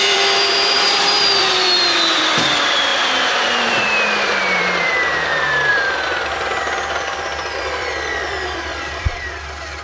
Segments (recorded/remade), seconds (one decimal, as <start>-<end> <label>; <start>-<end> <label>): 0.0-2.9 remade; 2.9-3.6 recorded; 3.6-4.9 remade; 4.9-5.7 recorded; 5.7-9.8 remade